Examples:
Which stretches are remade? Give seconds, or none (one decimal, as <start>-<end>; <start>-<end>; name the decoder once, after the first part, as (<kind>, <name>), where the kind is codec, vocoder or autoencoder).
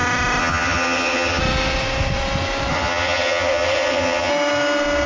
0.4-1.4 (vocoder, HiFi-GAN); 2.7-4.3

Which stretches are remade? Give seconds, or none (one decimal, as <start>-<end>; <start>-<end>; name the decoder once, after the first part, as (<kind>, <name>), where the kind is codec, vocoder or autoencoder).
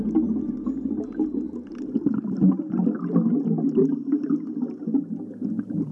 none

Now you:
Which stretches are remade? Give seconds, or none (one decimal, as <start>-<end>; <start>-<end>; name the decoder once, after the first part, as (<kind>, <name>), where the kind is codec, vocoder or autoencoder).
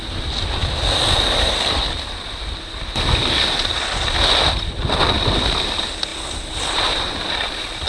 none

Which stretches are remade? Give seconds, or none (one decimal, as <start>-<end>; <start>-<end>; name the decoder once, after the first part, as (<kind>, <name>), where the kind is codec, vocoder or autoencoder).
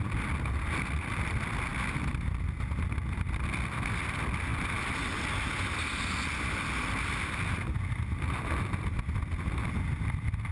none